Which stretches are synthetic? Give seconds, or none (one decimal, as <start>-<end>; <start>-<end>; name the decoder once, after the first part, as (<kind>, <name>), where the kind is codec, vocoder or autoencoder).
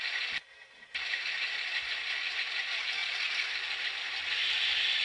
none